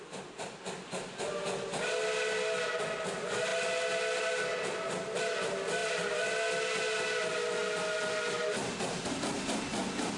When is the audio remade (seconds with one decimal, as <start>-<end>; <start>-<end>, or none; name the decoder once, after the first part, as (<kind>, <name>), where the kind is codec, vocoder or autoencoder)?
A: 7.6-8.4 (vocoder, BigVGAN v2)